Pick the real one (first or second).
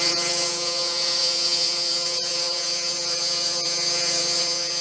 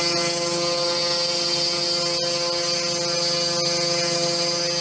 second